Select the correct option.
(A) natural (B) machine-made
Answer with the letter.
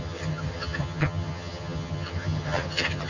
B